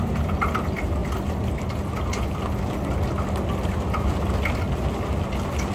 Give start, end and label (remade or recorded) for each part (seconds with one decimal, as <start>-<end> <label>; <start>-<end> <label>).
0.0-5.7 recorded

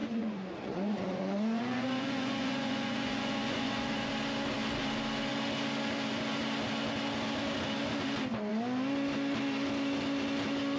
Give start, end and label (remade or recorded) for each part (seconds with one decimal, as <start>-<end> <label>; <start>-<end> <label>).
0.0-4.1 remade; 4.1-10.8 recorded

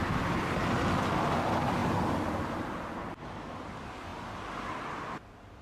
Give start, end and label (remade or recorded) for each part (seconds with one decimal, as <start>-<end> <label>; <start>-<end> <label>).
0.0-5.6 recorded

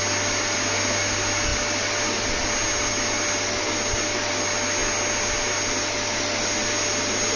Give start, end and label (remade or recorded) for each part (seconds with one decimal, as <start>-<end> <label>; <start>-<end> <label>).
0.0-7.4 recorded

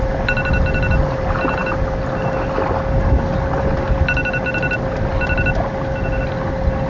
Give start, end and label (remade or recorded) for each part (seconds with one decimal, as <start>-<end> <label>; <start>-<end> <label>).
0.0-6.9 recorded

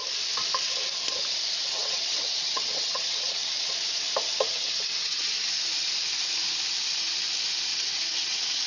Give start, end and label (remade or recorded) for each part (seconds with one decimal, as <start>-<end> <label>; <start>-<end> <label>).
0.0-1.6 recorded; 1.6-3.7 remade; 3.7-4.5 recorded; 4.5-5.2 remade; 5.2-7.7 recorded; 7.7-8.7 remade

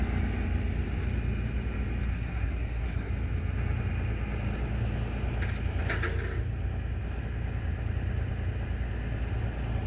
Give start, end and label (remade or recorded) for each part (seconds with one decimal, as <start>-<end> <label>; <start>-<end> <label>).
0.0-2.1 recorded; 2.1-3.1 remade; 3.1-9.9 recorded

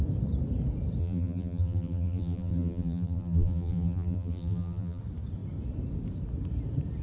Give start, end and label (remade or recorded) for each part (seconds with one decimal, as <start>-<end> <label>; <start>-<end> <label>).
0.0-1.0 recorded; 1.0-5.0 remade; 5.0-7.0 recorded